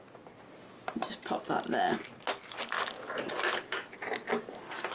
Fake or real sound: real